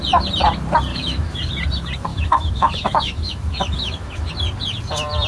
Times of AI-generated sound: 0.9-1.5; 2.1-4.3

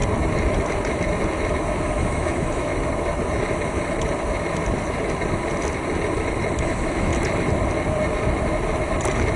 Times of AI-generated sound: 1.8-2.7; 6.6-7.1

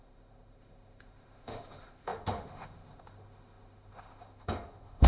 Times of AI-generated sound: 0.0-5.1

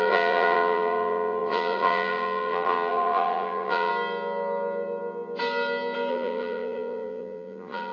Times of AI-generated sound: 0.0-3.9; 6.1-7.9

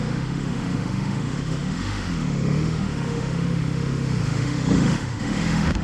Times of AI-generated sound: 0.0-5.8

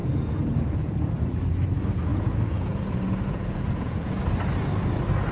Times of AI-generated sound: 0.0-1.1; 2.1-4.2